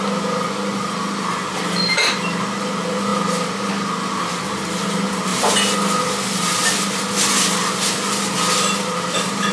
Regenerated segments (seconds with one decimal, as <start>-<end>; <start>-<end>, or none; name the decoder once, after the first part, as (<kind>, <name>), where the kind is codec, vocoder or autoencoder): none